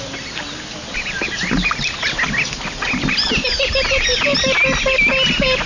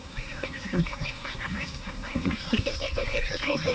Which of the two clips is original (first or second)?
first